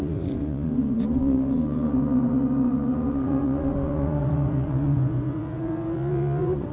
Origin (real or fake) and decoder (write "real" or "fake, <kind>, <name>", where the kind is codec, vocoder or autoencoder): fake, vocoder, Vocos